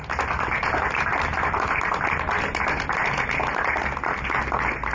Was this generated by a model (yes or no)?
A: no